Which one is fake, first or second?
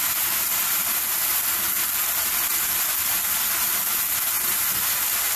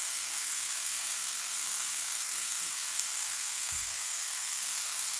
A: second